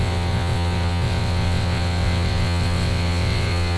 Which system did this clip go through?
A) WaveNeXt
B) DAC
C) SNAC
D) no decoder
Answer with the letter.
A